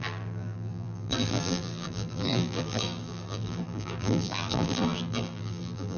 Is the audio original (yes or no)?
no